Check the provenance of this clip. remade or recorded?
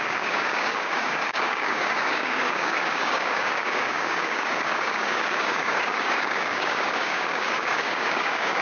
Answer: remade